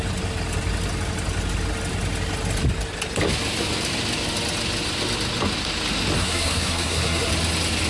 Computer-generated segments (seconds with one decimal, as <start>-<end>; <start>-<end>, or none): 6.2-7.3